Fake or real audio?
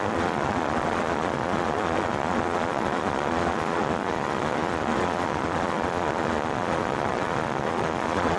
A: fake